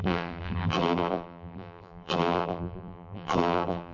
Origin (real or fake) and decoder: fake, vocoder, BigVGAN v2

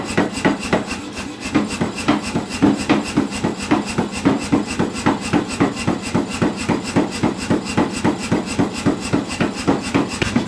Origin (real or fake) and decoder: real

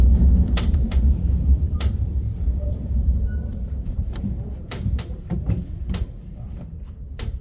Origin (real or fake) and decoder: fake, vocoder, BigVGAN v2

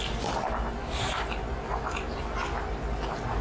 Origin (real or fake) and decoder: fake, vocoder, BigVGAN v2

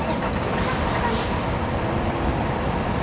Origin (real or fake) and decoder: real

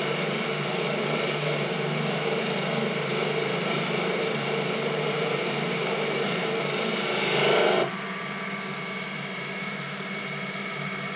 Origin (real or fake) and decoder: fake, vocoder, BigVGAN v2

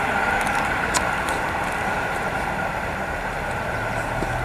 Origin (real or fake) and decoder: real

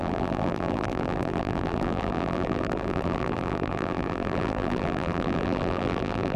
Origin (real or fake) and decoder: fake, vocoder, BigVGAN v2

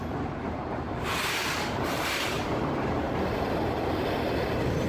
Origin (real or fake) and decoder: fake, vocoder, BigVGAN v2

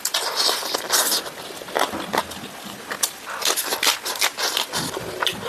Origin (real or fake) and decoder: real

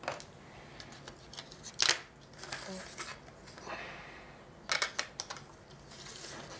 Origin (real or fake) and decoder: real